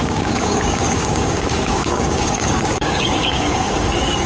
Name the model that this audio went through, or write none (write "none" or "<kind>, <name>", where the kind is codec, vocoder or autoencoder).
codec, DAC